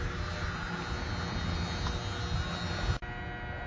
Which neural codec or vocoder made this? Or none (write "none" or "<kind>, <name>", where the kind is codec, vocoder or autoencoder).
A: none